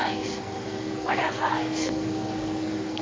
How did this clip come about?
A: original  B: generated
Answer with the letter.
B